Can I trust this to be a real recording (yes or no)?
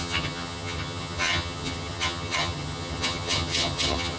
no